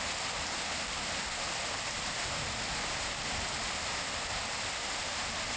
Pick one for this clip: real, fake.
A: real